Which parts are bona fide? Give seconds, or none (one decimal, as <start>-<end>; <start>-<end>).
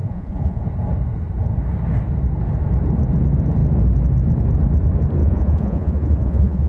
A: 0.6-5.2